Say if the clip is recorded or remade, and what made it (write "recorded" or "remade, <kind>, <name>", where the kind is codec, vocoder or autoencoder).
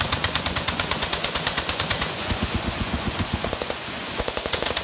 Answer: remade, vocoder, Vocos